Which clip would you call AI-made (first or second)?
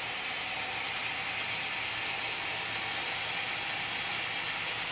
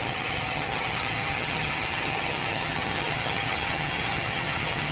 second